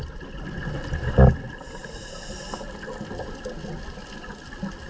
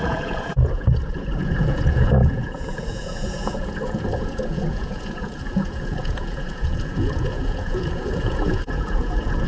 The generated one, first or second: second